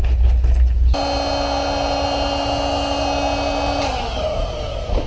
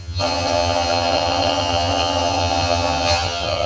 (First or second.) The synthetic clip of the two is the second